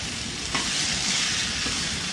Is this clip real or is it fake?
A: fake